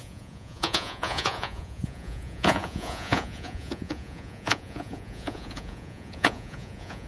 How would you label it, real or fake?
fake